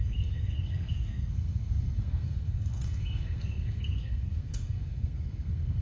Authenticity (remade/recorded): remade